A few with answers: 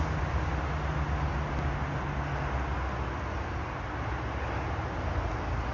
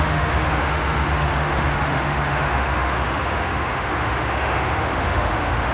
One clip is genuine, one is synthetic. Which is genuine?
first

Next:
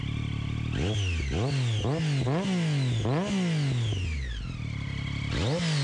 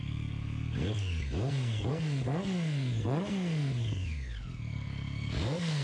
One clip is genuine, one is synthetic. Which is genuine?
first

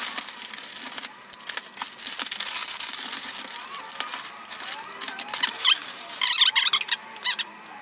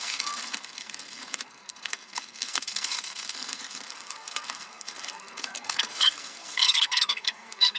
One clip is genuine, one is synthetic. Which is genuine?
first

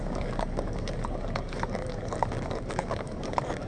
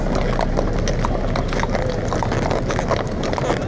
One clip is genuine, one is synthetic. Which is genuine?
second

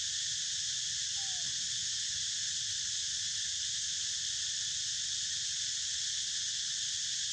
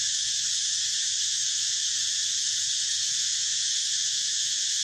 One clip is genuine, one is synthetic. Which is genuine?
first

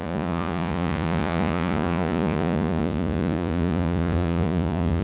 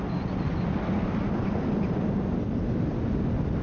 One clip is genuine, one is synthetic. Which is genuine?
second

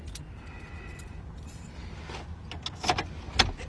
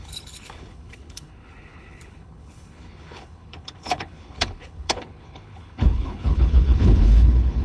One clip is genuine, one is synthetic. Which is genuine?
first